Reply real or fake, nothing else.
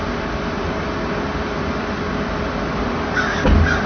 real